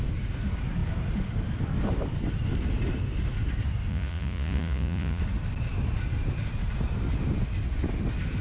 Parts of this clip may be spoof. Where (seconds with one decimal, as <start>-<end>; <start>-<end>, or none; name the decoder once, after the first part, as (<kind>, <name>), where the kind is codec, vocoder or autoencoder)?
3.9-5.2 (vocoder, Vocos)

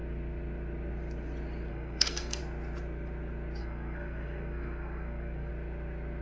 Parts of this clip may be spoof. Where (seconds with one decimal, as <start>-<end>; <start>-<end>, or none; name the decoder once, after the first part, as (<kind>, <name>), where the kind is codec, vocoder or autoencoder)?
1.7-2.4 (codec, SNAC); 3.6-5.5

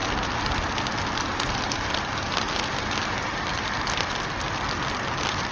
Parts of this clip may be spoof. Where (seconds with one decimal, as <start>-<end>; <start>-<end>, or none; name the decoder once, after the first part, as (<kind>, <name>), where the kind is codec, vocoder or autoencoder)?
none

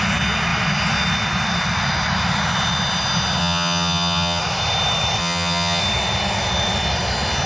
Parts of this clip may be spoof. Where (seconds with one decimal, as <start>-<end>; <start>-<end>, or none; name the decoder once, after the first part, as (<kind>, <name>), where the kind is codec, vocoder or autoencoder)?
3.4-4.4 (vocoder, HiFi-GAN); 5.2-5.8